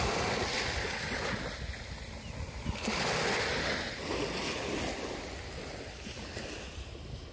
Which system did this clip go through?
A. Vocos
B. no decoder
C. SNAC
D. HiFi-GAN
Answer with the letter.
B